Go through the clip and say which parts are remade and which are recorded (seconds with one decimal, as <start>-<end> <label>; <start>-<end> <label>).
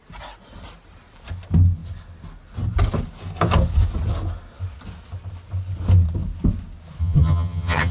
0.0-7.0 recorded; 7.0-7.9 remade